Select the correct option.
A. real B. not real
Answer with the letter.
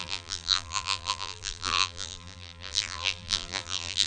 B